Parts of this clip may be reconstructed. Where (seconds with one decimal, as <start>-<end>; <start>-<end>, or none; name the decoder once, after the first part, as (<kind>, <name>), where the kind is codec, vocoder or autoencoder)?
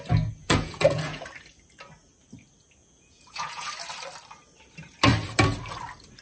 0.4-1.2 (vocoder, Vocos); 2.8-3.7